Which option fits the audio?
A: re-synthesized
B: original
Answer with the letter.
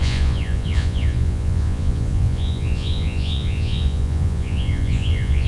A